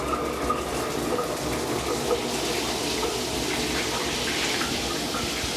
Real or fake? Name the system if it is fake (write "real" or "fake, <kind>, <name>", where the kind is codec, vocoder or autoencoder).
real